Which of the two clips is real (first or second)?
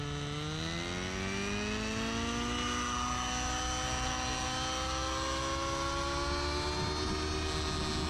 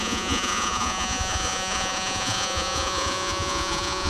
first